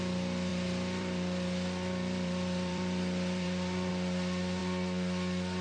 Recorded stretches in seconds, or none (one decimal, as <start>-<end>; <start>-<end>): 0.0-0.5; 3.9-5.6